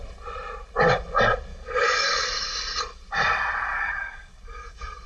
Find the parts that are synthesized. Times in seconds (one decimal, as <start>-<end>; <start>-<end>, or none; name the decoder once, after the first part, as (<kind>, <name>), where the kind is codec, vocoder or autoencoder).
1.5-3.0 (codec, DAC); 3.6-5.1